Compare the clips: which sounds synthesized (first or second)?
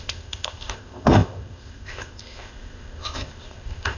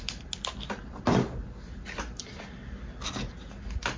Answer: first